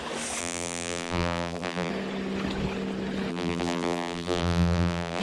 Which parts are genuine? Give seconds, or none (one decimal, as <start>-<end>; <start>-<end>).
0.0-0.4; 1.9-3.3